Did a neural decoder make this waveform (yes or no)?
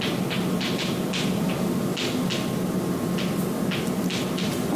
no